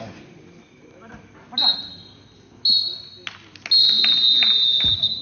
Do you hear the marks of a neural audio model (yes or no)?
no